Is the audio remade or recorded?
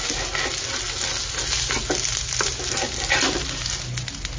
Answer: recorded